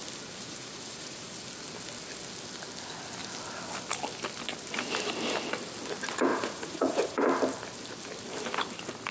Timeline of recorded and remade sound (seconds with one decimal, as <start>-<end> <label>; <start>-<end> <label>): 0.0-0.6 recorded; 0.6-1.3 remade; 1.3-6.3 recorded; 6.3-7.2 remade; 7.2-9.1 recorded